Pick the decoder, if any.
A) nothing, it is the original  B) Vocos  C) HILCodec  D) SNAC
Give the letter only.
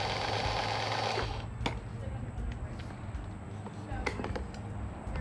A